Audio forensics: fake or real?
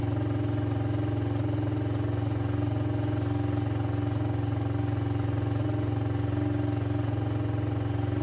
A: real